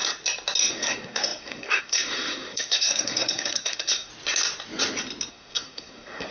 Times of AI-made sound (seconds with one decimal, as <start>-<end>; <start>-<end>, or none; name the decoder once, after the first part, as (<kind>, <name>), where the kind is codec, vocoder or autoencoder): 0.7-4.1 (codec, SNAC); 5.3-6.3